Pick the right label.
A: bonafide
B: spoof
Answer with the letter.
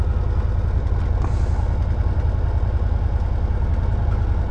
A